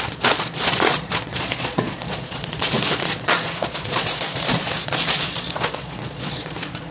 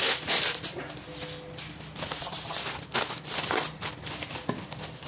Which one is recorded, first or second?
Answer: second